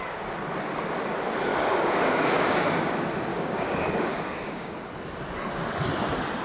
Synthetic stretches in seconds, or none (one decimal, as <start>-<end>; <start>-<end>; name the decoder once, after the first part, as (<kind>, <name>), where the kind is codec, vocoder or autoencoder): 1.5-2.8 (codec, DAC); 3.3-4.7